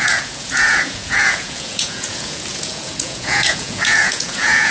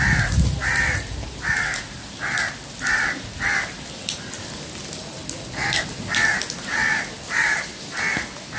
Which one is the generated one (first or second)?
first